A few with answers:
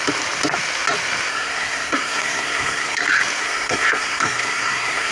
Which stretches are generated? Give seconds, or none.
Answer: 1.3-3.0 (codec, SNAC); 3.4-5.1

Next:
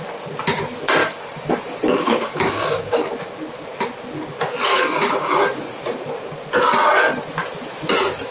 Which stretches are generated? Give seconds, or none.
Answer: 1.0-3.1 (codec, DAC); 4.7-5.6

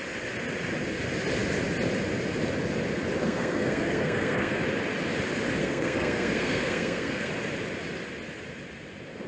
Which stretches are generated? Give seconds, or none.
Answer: 3.2-4.6 (codec, SNAC); 5.6-7.3